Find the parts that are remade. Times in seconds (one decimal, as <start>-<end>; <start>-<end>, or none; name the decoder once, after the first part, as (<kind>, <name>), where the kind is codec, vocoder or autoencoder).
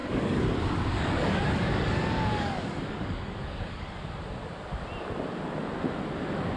0.0-4.0 (codec, DAC)